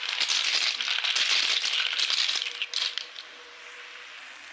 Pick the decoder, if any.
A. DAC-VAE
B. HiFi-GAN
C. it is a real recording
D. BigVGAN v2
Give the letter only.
C